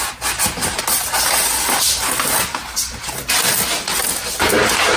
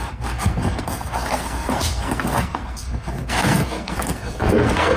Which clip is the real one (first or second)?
first